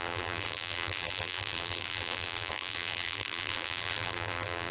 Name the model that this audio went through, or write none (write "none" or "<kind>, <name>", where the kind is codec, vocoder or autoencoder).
vocoder, BigVGAN v2